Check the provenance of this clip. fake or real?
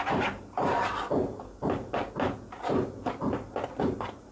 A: real